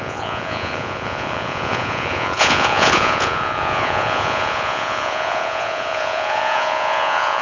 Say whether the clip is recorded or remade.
remade